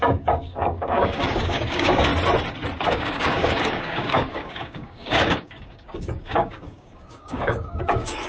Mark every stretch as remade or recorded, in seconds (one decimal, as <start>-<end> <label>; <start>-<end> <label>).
0.0-2.1 remade; 2.1-2.9 recorded; 2.9-8.3 remade

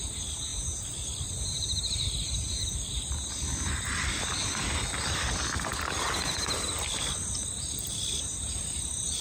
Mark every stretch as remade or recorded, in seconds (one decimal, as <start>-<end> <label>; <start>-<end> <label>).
0.0-9.2 recorded

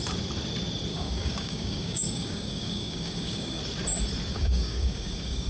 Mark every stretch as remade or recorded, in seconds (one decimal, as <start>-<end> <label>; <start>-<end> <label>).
0.0-0.9 recorded; 0.9-3.6 remade; 3.6-4.3 recorded; 4.3-5.5 remade

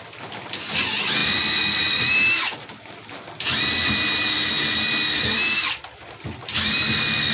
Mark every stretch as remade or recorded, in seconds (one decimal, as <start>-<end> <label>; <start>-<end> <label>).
0.0-7.3 recorded